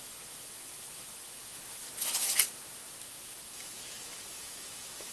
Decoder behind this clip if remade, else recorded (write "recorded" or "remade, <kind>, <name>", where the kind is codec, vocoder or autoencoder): remade, autoencoder, DAC-VAE